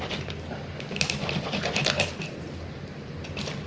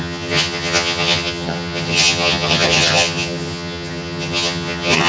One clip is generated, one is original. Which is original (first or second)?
first